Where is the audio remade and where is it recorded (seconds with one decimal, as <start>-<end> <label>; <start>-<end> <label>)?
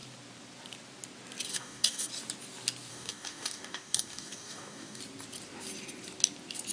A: 0.0-1.5 recorded; 1.5-2.1 remade; 2.1-2.9 recorded; 2.9-5.0 remade; 5.0-6.7 recorded